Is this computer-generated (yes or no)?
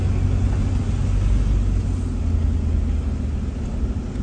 no